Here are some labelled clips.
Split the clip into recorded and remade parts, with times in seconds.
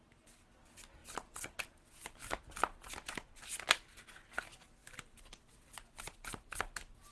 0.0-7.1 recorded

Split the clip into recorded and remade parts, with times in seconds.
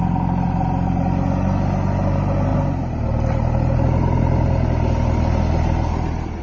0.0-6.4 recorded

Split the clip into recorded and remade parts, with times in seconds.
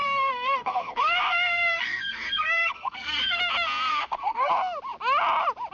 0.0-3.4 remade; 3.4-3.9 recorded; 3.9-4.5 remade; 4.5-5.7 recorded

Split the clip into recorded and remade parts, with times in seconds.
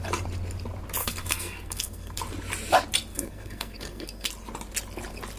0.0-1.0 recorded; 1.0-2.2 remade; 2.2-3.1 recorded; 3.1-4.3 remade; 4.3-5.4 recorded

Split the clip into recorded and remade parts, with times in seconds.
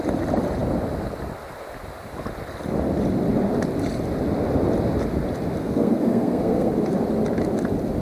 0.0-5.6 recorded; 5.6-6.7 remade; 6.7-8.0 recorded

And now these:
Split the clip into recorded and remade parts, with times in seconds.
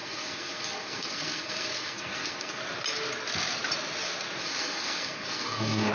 0.0-2.6 remade; 2.6-4.4 recorded; 4.4-5.9 remade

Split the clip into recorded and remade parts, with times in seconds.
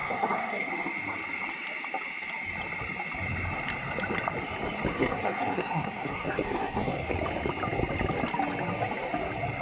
0.0-0.7 remade; 0.7-4.9 recorded; 4.9-7.1 remade; 7.1-9.6 recorded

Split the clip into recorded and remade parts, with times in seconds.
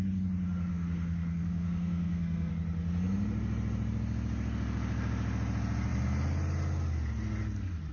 0.0-0.7 recorded; 0.7-2.5 remade; 2.5-7.9 recorded